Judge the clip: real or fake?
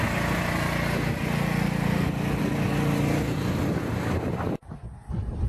real